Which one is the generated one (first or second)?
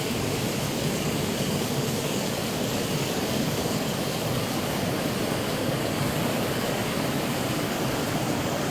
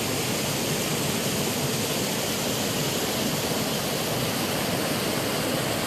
first